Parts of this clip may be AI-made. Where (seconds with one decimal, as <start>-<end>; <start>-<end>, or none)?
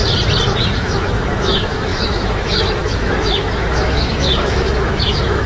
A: 0.6-5.5